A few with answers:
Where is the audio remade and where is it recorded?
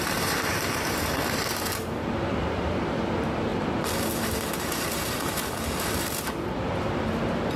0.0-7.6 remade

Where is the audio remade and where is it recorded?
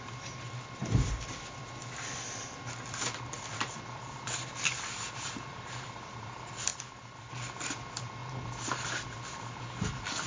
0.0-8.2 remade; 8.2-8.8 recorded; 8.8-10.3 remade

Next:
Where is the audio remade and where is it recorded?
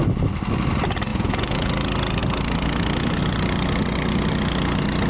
0.0-1.1 recorded; 1.1-1.7 remade; 1.7-5.1 recorded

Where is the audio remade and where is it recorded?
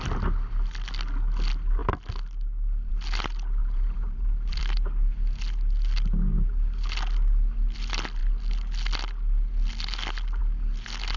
0.0-3.6 recorded; 3.6-4.6 remade; 4.6-11.2 recorded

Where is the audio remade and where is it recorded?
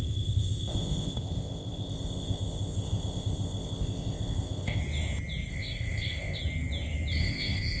0.0-4.8 remade; 4.8-5.5 recorded; 5.5-6.4 remade; 6.4-7.2 recorded; 7.2-7.8 remade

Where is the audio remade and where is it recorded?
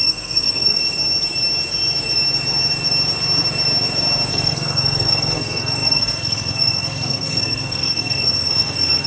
0.0-0.8 remade; 0.8-4.3 recorded; 4.3-9.1 remade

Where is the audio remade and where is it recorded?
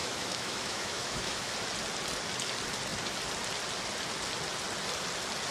0.0-1.5 remade; 1.5-5.5 recorded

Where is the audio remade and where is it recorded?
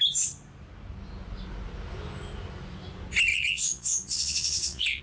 0.0-3.3 recorded; 3.3-5.0 remade